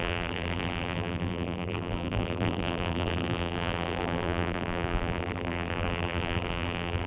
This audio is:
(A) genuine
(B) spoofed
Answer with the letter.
B